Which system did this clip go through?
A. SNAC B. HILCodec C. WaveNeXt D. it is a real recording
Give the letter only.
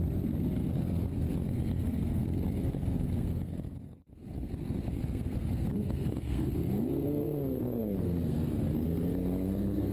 A